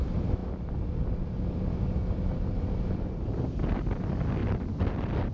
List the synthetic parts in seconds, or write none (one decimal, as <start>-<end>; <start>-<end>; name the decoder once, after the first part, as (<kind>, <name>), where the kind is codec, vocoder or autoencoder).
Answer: 0.0-0.4 (vocoder, BigVGAN v2); 3.3-5.3